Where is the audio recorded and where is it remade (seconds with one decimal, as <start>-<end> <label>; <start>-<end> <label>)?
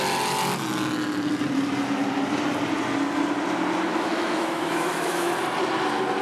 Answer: 0.0-3.9 recorded; 3.9-5.3 remade; 5.3-6.2 recorded